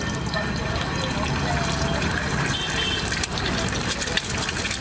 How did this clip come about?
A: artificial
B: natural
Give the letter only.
B